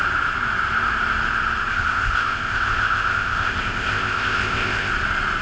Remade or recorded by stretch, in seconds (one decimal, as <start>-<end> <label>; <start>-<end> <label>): 0.0-1.7 recorded; 1.7-4.9 remade; 4.9-5.4 recorded